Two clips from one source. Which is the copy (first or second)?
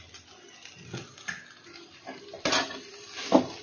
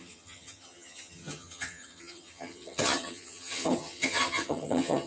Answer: second